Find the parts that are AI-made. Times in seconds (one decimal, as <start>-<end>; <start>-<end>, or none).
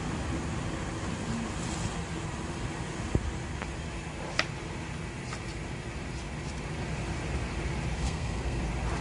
8.0-8.6